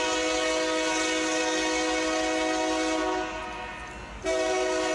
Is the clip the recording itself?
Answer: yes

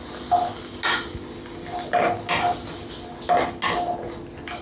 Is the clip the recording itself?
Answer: yes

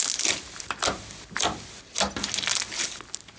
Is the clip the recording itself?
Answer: yes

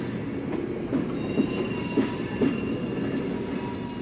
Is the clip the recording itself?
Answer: yes